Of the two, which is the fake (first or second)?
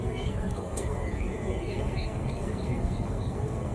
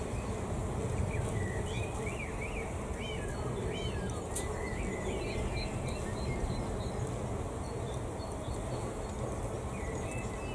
first